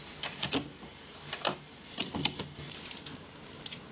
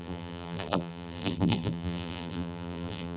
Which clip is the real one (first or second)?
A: first